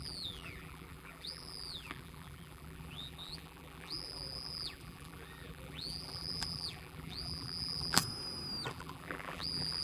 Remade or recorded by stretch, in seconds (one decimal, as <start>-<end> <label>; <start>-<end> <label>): 0.0-8.0 remade; 8.0-8.7 recorded; 8.7-9.8 remade

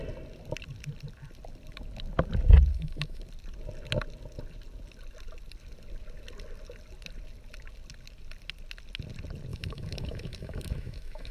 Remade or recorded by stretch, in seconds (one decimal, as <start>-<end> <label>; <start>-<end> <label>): 0.0-2.7 recorded; 2.7-3.2 remade; 3.2-9.5 recorded; 9.5-11.3 remade

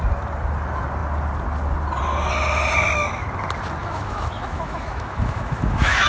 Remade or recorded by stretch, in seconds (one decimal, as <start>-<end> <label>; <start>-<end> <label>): 0.0-3.8 recorded; 3.8-6.1 remade

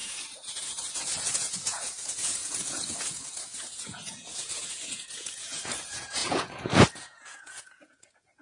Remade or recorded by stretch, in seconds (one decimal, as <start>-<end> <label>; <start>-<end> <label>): 0.0-8.4 remade

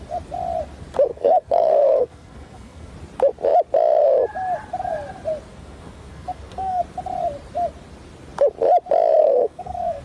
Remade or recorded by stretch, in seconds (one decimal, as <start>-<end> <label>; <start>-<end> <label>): 0.0-1.1 recorded; 1.1-2.9 remade; 2.9-5.5 recorded; 5.5-6.8 remade; 6.8-9.2 recorded; 9.2-10.0 remade

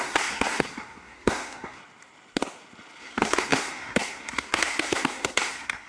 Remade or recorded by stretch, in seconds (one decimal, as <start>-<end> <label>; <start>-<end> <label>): 0.0-1.8 remade; 1.8-3.0 recorded; 3.0-5.9 remade

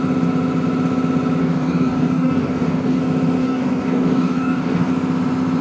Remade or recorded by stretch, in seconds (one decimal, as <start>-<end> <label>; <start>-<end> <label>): 0.0-1.4 recorded; 1.4-3.0 remade; 3.0-3.4 recorded; 3.4-4.9 remade; 4.9-5.6 recorded

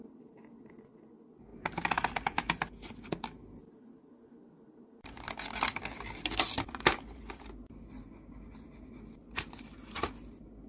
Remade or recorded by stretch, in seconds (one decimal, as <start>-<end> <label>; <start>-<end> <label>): 0.0-10.7 recorded